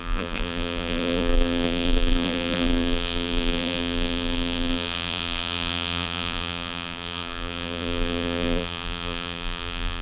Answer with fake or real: fake